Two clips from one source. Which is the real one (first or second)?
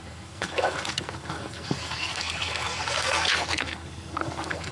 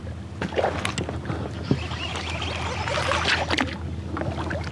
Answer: second